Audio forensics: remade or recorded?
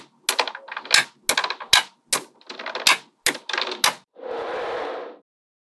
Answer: recorded